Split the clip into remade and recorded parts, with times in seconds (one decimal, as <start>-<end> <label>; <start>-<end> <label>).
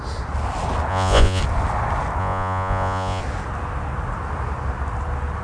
0.0-0.9 recorded; 0.9-1.4 remade; 1.4-2.2 recorded; 2.2-3.2 remade; 3.2-5.4 recorded